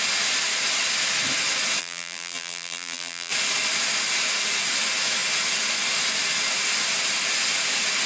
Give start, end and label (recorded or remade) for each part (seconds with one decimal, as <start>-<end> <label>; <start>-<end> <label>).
0.0-1.8 recorded; 1.8-3.3 remade; 3.3-8.1 recorded